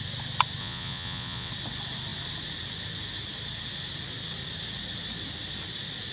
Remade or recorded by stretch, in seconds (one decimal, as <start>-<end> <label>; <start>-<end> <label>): 0.0-0.6 recorded; 0.6-1.5 remade; 1.5-6.1 recorded